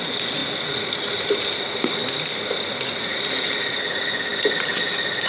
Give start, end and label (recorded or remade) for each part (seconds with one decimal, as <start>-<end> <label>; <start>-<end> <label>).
0.0-5.3 recorded